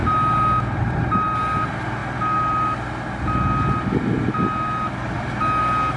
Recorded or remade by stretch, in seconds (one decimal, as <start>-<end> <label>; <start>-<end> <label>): 0.0-6.0 recorded